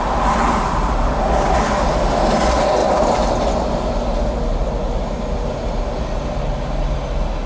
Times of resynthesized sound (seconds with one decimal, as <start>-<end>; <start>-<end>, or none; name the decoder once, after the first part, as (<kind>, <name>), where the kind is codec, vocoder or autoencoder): none